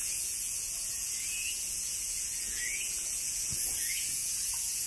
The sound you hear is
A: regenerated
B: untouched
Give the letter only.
A